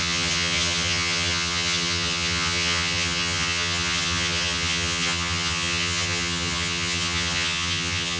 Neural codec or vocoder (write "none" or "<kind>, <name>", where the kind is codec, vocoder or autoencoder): vocoder, HiFi-GAN